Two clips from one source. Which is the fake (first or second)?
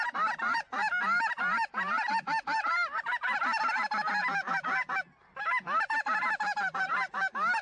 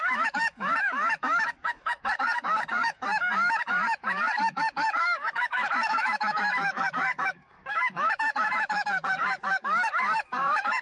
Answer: second